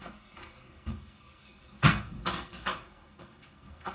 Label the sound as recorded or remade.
remade